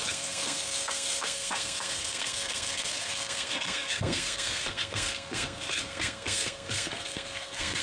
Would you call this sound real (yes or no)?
no